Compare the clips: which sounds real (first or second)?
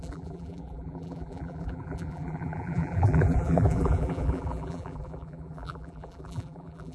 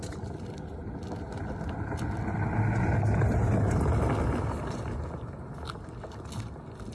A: second